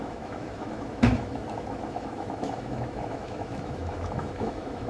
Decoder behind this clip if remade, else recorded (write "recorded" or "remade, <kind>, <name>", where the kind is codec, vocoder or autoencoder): remade, autoencoder, DAC-VAE